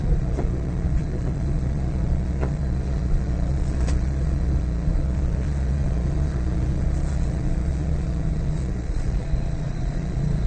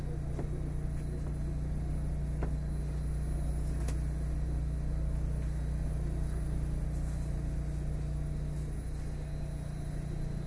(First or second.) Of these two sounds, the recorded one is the second